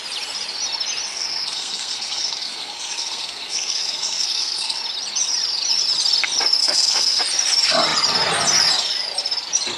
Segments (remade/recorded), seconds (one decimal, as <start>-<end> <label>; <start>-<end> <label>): 0.0-1.1 recorded; 1.1-4.8 remade; 4.8-6.6 recorded; 6.6-7.2 remade; 7.2-9.8 recorded

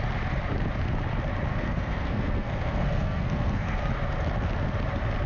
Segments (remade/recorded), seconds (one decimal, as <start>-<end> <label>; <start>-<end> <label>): 0.0-1.5 recorded; 1.5-3.9 remade; 3.9-5.3 recorded

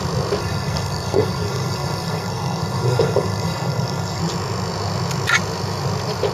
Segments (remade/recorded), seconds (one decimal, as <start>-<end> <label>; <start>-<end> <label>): 0.0-0.4 recorded; 0.4-4.2 remade; 4.2-6.3 recorded

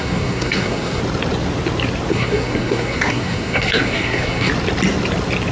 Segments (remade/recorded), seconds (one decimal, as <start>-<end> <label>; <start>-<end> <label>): 0.0-1.0 remade; 1.0-2.1 recorded; 2.1-4.5 remade; 4.5-5.5 recorded

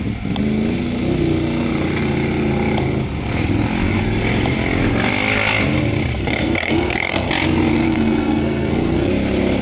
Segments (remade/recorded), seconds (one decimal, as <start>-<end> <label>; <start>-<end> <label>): 0.0-6.2 recorded; 6.2-7.3 remade; 7.3-7.7 recorded; 7.7-9.1 remade; 9.1-9.6 recorded